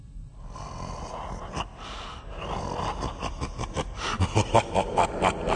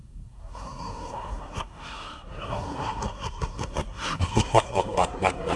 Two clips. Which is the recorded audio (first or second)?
first